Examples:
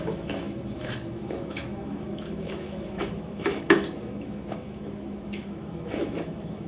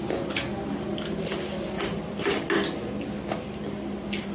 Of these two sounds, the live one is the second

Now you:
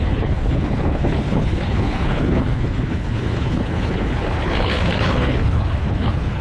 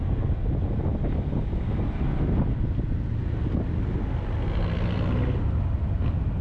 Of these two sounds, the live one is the second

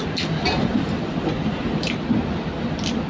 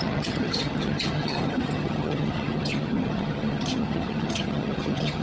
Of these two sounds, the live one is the first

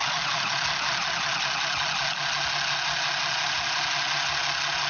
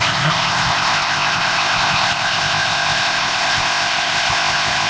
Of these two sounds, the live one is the first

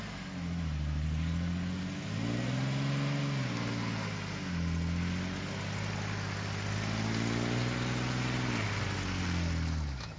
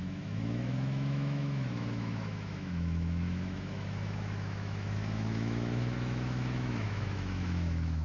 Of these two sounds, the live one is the first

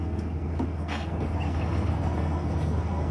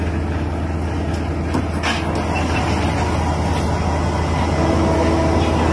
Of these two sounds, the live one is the second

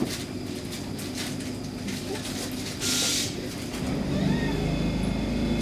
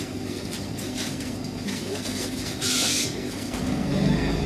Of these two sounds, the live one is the first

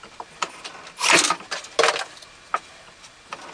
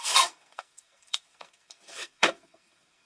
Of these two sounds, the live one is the first